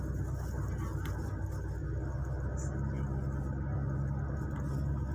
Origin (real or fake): real